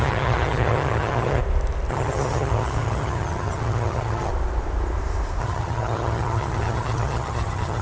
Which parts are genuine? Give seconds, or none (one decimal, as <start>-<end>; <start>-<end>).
1.4-1.9; 4.3-5.4